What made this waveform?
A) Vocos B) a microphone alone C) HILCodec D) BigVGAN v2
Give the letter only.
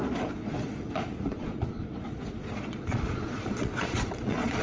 A